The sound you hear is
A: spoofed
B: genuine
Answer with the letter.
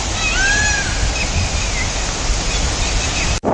B